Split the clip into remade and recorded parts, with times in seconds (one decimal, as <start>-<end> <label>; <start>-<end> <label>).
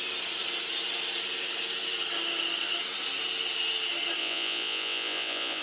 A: 0.0-4.2 recorded; 4.2-5.6 remade